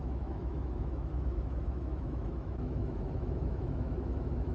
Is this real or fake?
fake